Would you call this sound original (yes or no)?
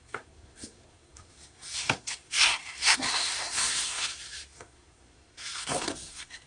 no